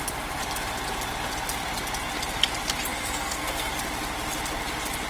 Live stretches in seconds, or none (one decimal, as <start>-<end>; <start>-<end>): 0.0-2.9; 3.7-5.1